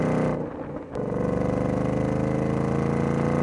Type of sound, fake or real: real